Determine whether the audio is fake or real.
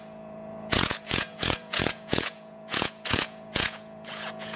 fake